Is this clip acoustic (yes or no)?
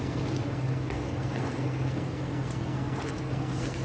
no